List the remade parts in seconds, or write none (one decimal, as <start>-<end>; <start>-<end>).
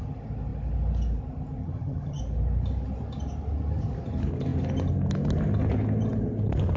1.6-2.2